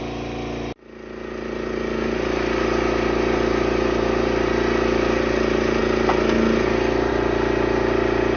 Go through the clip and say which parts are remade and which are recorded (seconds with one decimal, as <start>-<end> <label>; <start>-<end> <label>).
0.0-8.4 recorded

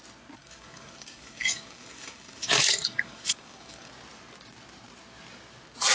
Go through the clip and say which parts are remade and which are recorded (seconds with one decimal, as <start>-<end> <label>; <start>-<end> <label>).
0.0-0.4 recorded; 0.4-3.9 remade; 3.9-5.9 recorded